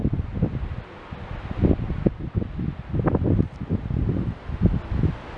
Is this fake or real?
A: real